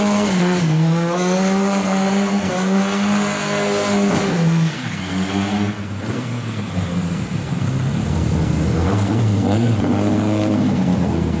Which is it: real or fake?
fake